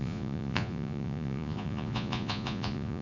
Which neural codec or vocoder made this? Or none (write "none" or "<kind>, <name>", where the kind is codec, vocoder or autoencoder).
vocoder, Vocos